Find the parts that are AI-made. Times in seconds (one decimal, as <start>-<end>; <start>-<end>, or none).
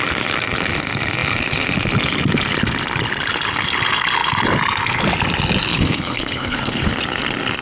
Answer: 5.7-7.0